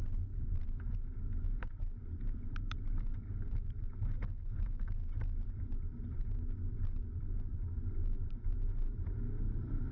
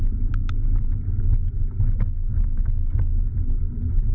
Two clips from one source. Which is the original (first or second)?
second